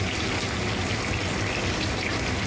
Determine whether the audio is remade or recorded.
recorded